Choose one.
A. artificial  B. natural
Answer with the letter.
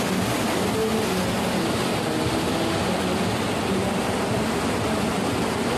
B